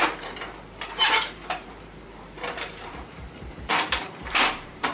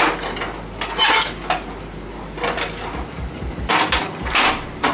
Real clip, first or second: second